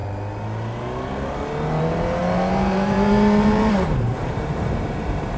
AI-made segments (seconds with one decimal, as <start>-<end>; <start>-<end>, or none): 2.2-5.4